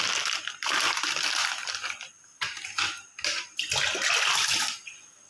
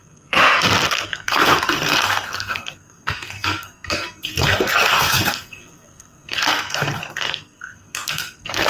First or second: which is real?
first